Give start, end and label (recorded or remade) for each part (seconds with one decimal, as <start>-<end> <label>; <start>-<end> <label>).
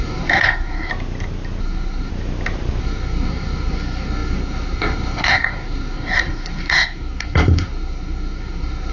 0.0-0.9 remade; 0.9-1.6 recorded; 1.6-2.1 remade; 2.1-2.8 recorded; 2.8-8.9 remade